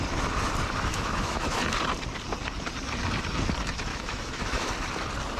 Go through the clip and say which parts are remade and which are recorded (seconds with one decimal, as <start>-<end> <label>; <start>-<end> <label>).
0.0-0.9 recorded; 0.9-1.6 remade; 1.6-3.9 recorded; 3.9-4.7 remade; 4.7-5.4 recorded